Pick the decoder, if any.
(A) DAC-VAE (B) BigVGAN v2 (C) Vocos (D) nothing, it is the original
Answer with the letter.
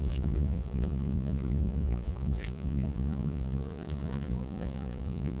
C